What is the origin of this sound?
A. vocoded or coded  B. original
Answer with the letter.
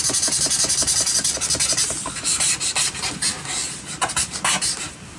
B